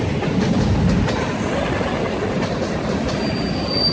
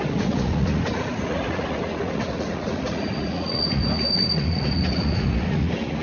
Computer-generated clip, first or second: second